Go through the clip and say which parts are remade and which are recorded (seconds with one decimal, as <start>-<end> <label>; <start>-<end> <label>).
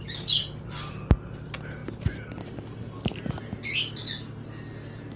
0.0-5.2 recorded